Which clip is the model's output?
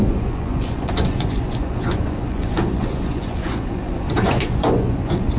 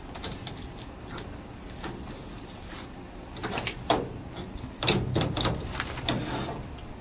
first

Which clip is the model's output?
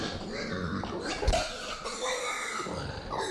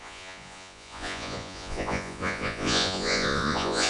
second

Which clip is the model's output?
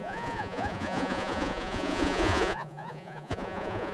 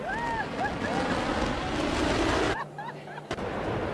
first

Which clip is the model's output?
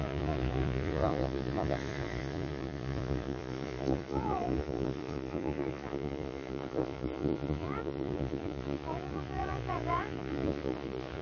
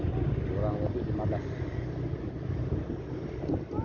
first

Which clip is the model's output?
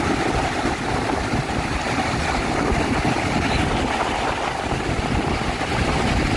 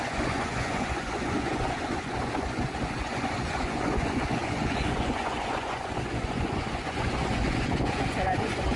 second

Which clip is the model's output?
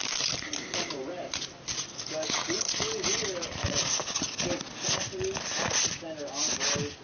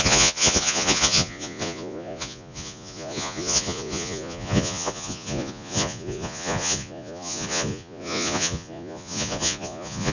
second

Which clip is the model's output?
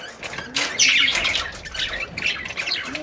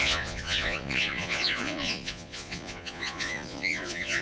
second